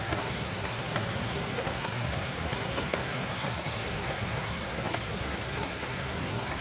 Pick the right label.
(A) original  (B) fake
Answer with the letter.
B